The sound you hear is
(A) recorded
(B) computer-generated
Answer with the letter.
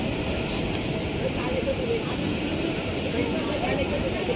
A